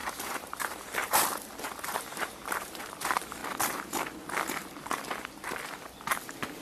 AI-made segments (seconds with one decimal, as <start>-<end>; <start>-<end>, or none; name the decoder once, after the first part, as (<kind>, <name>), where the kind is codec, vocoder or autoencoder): 0.0-2.8 (vocoder, BigVGAN v2)